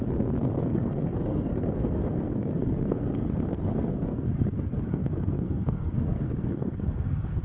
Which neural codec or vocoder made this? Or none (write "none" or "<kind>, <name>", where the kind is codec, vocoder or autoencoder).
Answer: codec, SNAC